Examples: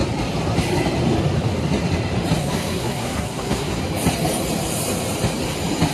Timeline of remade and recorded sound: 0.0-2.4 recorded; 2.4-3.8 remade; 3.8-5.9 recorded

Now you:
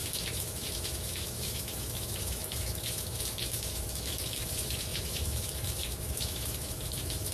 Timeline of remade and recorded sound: 0.0-7.3 remade

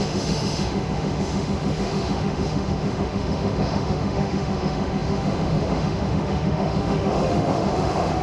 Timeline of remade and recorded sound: 0.0-8.2 remade

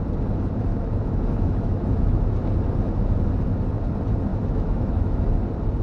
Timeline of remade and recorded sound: 0.0-0.7 recorded; 0.7-2.3 remade; 2.3-4.3 recorded; 4.3-5.3 remade; 5.3-5.8 recorded

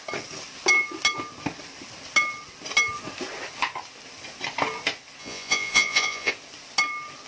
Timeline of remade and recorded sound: 0.0-5.2 recorded; 5.2-6.3 remade; 6.3-7.3 recorded

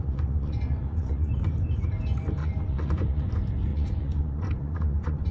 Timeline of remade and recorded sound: 0.0-1.3 remade; 1.3-2.4 recorded; 2.4-3.3 remade; 3.3-3.7 recorded; 3.7-5.3 remade

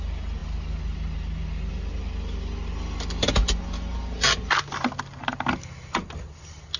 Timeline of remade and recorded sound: 0.0-6.8 recorded